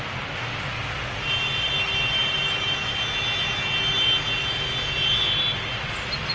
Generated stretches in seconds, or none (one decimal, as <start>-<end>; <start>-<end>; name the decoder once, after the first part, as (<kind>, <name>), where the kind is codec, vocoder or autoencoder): none